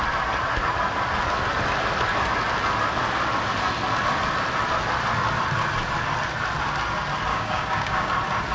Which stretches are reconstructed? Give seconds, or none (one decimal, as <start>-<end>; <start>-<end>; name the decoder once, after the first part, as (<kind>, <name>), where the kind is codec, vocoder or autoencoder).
7.3-8.1 (codec, DAC)